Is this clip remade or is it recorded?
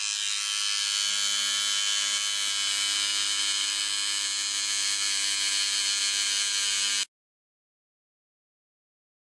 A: recorded